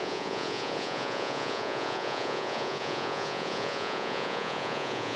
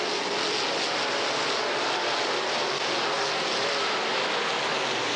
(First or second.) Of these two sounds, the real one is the second